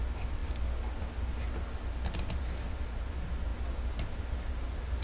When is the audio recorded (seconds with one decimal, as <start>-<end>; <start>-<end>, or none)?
0.0-5.0